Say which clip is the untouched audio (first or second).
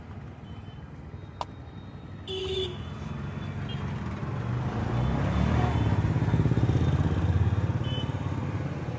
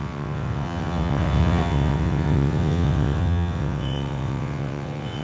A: first